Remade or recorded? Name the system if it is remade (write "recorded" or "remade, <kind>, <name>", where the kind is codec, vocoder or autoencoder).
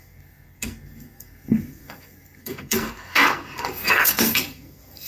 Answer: remade, codec, SNAC